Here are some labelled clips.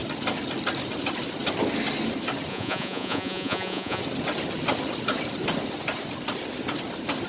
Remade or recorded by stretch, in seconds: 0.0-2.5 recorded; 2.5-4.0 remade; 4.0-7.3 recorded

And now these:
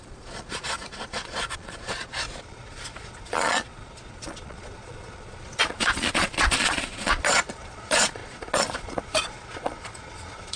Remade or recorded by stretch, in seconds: 0.0-10.6 remade

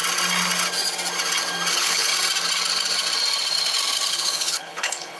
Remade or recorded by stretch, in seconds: 0.0-1.7 recorded; 1.7-2.1 remade; 2.1-4.1 recorded; 4.1-5.2 remade